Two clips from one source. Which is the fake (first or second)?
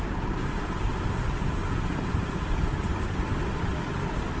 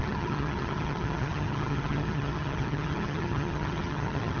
second